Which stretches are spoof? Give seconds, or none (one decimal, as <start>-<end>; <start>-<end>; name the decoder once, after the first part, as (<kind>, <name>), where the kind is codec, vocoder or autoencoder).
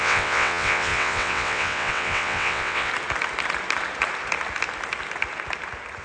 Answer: 0.0-2.9 (vocoder, WaveNeXt)